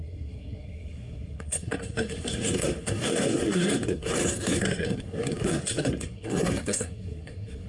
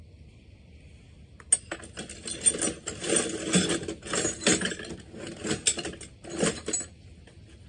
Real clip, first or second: second